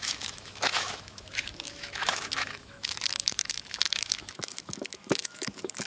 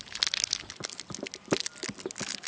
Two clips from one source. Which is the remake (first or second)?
first